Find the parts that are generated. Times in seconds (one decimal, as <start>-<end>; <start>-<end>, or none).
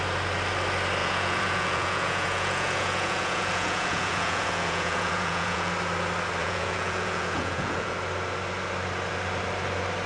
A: 1.0-5.7; 6.4-7.9